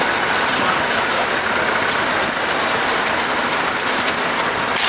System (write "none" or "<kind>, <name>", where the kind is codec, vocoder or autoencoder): none